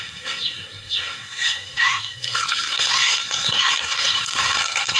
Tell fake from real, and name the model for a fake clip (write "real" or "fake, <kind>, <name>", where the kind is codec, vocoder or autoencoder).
fake, codec, SNAC